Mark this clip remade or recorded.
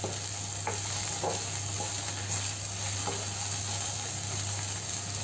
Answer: recorded